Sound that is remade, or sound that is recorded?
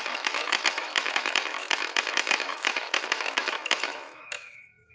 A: remade